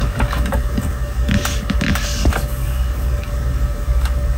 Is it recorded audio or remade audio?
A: remade